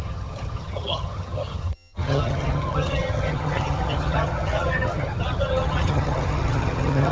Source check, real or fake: fake